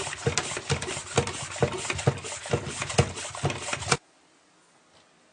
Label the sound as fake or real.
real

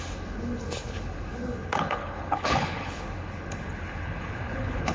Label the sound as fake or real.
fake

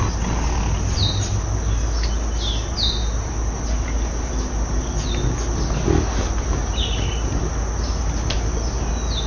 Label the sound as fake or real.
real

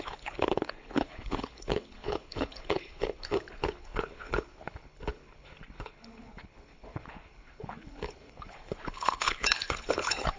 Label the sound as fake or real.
fake